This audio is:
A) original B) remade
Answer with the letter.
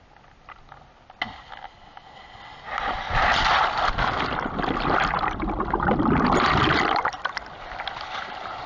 A